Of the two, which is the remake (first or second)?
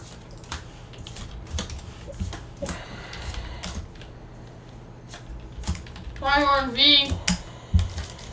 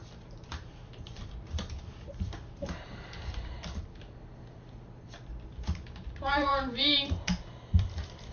second